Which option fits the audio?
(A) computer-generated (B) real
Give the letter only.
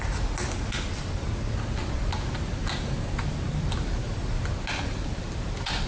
B